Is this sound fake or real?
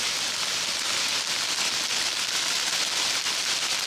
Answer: real